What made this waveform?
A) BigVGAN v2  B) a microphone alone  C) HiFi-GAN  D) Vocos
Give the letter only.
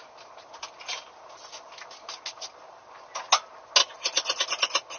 B